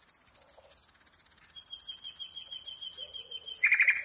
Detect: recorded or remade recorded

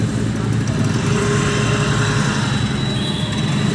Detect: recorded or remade recorded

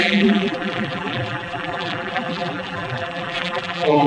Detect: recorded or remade remade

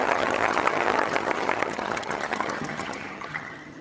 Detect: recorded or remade remade